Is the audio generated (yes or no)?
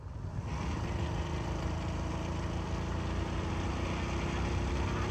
no